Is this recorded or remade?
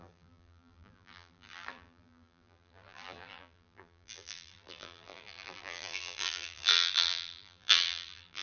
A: remade